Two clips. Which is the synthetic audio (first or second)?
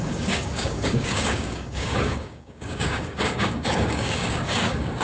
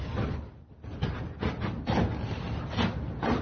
first